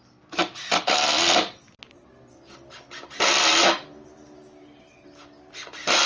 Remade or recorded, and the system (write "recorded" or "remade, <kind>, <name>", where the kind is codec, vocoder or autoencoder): recorded